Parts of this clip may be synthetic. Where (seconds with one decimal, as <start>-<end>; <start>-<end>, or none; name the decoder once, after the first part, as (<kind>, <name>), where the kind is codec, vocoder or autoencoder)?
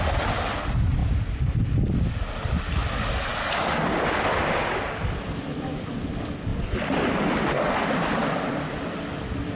none